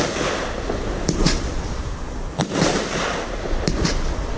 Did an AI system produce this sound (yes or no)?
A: no